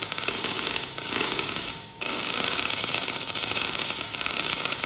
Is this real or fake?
fake